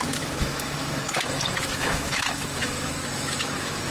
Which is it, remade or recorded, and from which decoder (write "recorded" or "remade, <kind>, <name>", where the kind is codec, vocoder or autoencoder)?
remade, autoencoder, DAC-VAE